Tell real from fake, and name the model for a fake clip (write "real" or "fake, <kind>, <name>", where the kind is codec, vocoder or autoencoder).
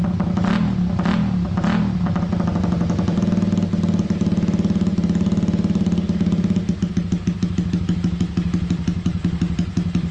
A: real